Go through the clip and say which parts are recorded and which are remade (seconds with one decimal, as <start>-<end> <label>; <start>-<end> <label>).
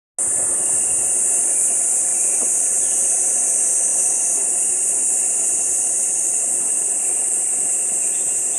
0.0-2.1 recorded; 2.1-3.4 remade; 3.4-3.9 recorded; 3.9-8.0 remade; 8.0-8.6 recorded